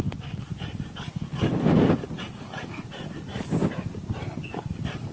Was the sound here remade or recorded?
recorded